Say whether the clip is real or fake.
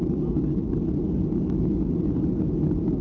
real